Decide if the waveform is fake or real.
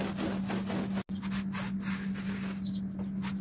real